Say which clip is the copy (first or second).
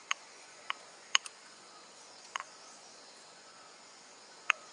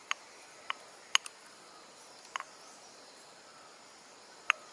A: first